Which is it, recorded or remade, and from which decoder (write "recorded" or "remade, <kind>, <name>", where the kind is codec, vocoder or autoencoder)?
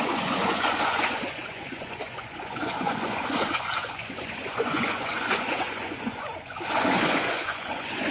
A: remade, vocoder, Vocos